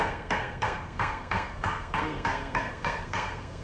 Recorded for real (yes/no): no